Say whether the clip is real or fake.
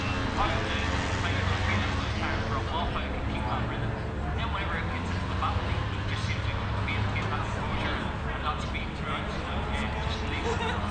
real